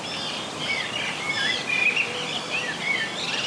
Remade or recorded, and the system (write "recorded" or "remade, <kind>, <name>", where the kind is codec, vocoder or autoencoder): recorded